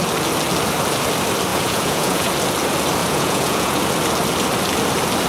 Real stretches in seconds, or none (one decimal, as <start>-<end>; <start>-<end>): 0.0-1.5; 2.3-3.0; 3.8-5.3